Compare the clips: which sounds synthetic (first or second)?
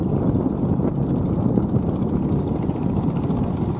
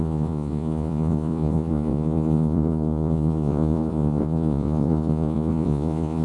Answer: second